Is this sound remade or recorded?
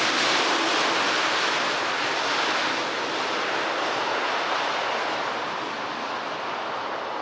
recorded